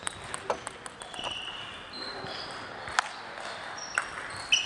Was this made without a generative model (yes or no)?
yes